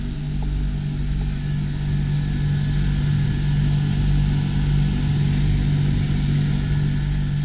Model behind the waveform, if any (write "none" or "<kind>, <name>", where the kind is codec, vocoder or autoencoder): none